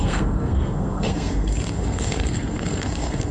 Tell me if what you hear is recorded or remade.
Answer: remade